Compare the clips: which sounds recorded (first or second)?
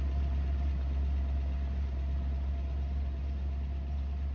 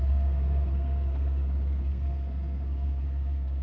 first